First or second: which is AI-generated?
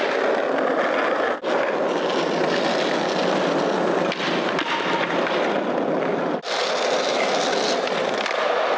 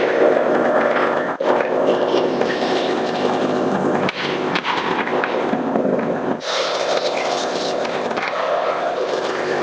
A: second